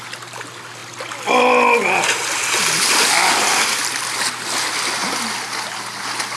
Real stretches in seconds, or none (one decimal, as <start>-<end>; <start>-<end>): 0.0-6.4